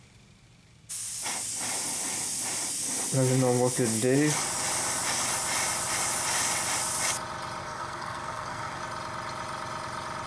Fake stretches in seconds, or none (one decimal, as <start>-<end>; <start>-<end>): 7.6-8.8